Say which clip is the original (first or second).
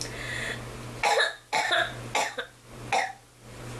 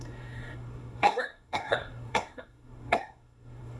first